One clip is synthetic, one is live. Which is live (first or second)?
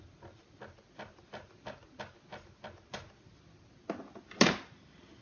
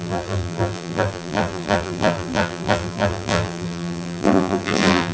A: first